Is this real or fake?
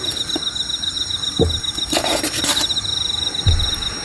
real